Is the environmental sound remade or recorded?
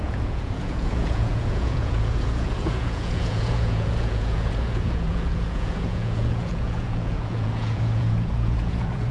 remade